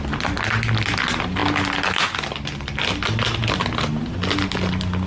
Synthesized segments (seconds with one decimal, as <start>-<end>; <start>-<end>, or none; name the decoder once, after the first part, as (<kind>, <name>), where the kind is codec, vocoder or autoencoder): none